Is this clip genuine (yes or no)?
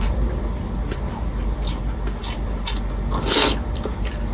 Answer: yes